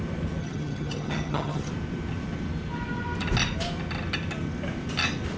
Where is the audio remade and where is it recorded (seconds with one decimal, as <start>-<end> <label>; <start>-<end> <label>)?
0.0-0.4 recorded; 0.4-1.7 remade; 1.7-5.4 recorded

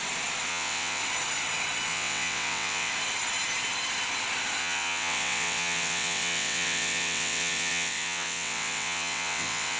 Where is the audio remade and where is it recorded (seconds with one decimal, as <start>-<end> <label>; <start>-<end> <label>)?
0.0-0.5 recorded; 0.5-1.0 remade; 1.0-1.9 recorded; 1.9-2.9 remade; 2.9-4.6 recorded; 4.6-9.8 remade

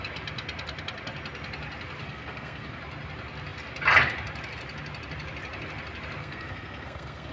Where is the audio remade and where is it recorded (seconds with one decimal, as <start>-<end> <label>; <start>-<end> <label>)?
0.0-2.0 recorded; 2.0-2.8 remade; 2.8-6.2 recorded; 6.2-7.3 remade

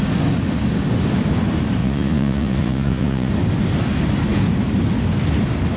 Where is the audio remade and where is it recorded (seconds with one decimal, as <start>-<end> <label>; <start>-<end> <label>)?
0.0-1.8 recorded; 1.8-3.3 remade; 3.3-5.8 recorded

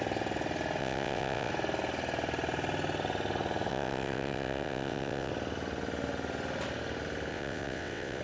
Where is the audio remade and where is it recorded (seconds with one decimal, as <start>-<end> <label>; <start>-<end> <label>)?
0.0-0.8 recorded; 0.8-1.5 remade; 1.5-3.7 recorded; 3.7-5.3 remade; 5.3-7.3 recorded; 7.3-8.2 remade